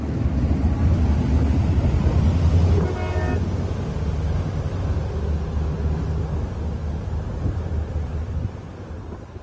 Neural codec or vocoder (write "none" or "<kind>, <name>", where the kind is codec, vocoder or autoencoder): none